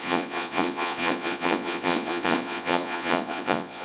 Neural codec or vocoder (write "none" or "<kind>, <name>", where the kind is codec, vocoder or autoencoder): vocoder, Vocos